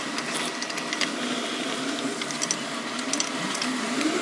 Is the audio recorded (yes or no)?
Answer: yes